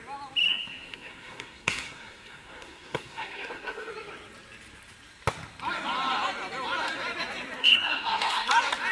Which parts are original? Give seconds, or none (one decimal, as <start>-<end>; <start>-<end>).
0.0-0.5; 3.9-7.6; 8.5-8.9